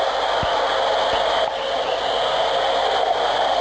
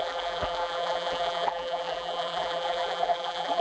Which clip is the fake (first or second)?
second